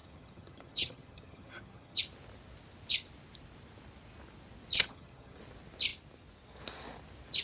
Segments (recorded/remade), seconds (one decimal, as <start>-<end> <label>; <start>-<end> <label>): 0.0-2.0 remade; 2.0-4.7 recorded; 4.7-5.4 remade; 5.4-7.4 recorded